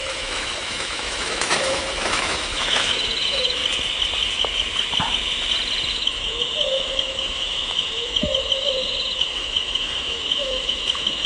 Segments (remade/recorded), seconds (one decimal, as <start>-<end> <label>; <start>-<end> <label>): 0.0-3.6 remade; 3.6-5.9 recorded; 5.9-11.3 remade